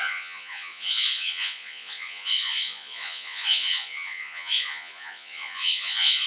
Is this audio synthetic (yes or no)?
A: yes